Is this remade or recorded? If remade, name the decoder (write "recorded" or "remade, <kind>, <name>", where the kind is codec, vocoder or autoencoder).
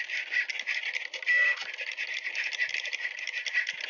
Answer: recorded